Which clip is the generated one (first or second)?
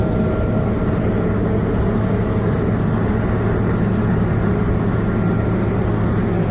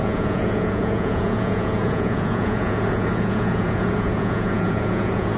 second